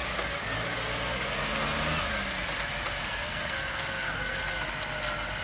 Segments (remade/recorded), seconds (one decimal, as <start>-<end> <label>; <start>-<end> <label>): 0.0-3.0 recorded; 3.0-4.4 remade; 4.4-5.4 recorded